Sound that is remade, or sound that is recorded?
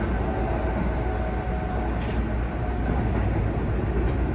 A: recorded